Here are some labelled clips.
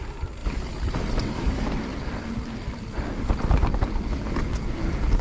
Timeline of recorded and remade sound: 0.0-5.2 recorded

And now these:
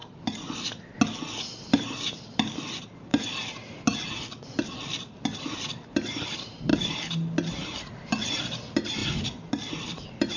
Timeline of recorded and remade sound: 0.0-1.4 recorded; 1.4-3.1 remade; 3.1-4.7 recorded; 4.7-6.7 remade; 6.7-8.4 recorded; 8.4-9.0 remade; 9.0-9.7 recorded; 9.7-10.4 remade

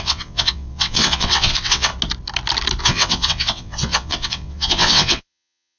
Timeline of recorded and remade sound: 0.0-1.9 remade; 1.9-2.8 recorded; 2.8-5.8 remade